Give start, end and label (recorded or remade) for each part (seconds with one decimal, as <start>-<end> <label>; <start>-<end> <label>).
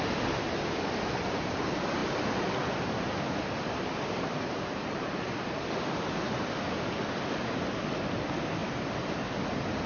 0.0-9.9 recorded